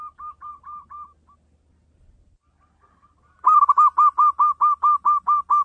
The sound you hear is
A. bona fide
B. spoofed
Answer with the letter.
A